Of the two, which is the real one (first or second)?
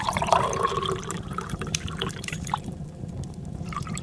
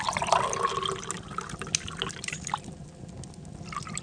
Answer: second